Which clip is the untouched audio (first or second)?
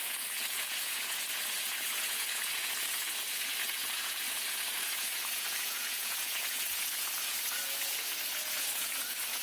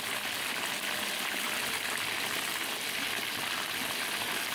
second